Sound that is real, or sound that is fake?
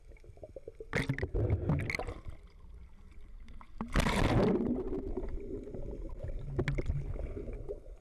real